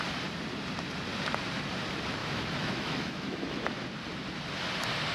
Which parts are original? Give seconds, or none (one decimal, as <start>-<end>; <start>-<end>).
0.0-2.2; 3.7-5.1